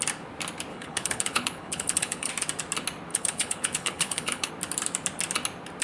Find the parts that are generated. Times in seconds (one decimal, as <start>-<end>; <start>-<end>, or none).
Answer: 0.7-2.3; 3.1-4.5